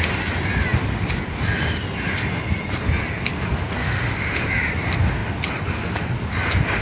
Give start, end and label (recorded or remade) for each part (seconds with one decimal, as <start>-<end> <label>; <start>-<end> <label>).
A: 0.0-3.8 recorded; 3.8-4.4 remade; 4.4-6.8 recorded